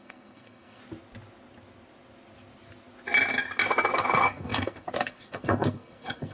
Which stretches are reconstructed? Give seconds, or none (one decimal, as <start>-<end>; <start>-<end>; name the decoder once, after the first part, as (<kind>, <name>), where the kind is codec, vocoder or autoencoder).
0.0-0.8 (codec, SNAC); 3.9-6.3